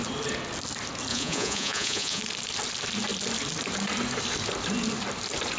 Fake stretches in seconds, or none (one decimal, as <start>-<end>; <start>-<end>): 1.1-2.2